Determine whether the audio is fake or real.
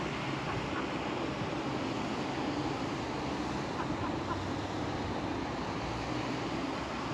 real